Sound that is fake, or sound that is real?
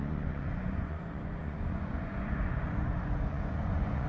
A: fake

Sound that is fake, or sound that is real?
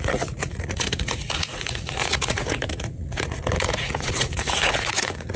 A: fake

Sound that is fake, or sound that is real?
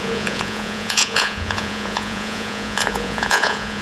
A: fake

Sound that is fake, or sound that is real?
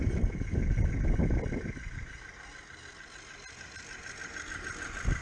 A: real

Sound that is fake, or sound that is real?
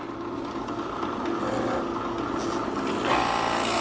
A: real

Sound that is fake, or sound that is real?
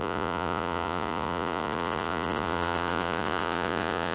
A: fake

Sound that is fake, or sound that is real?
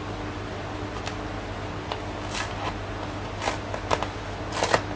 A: real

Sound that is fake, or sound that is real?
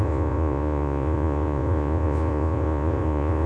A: fake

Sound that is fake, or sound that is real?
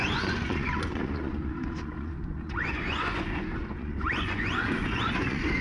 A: fake